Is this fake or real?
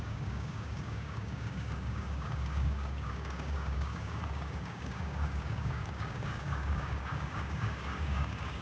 fake